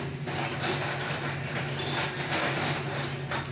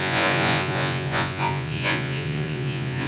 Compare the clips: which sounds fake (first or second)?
second